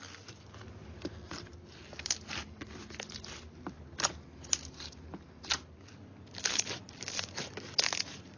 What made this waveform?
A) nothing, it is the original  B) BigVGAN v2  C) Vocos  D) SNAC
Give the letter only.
A